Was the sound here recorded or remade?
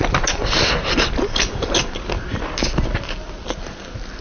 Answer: recorded